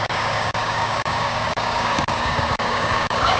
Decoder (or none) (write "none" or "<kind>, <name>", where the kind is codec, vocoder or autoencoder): codec, DAC